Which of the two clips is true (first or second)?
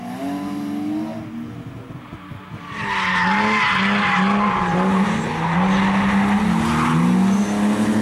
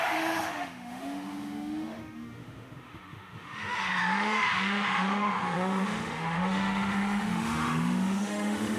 first